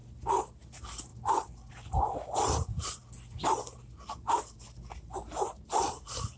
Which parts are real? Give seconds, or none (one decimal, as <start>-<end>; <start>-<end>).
0.0-0.7; 1.1-1.7; 3.0-5.5